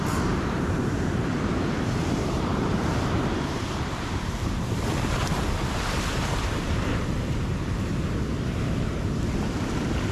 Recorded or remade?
remade